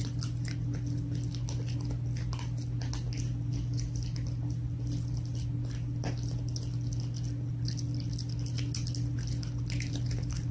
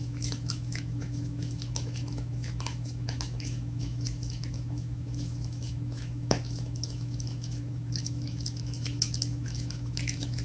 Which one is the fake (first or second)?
second